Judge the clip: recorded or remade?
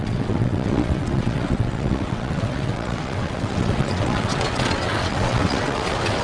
remade